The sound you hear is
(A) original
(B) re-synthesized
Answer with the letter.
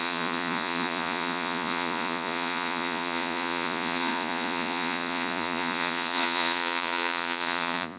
B